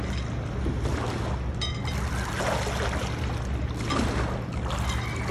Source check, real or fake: real